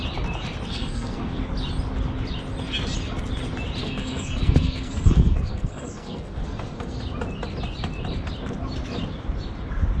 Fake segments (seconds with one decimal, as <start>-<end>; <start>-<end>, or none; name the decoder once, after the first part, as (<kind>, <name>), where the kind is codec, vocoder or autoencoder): 0.7-1.4 (codec, SNAC); 3.8-7.0